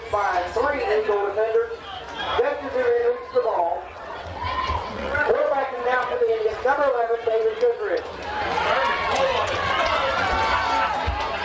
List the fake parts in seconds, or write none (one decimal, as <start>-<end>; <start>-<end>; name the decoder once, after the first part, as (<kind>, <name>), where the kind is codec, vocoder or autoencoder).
3.0-8.0 (vocoder, WaveNeXt); 8.5-10.4